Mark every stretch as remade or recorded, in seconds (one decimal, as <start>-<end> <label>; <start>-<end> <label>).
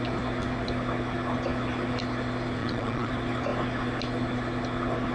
0.0-2.6 recorded; 2.6-3.1 remade; 3.1-5.1 recorded